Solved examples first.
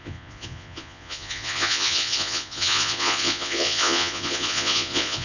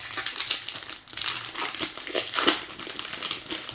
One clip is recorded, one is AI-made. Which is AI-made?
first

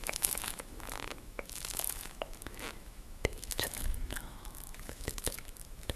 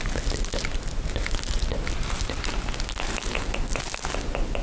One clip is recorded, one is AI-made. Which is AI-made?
first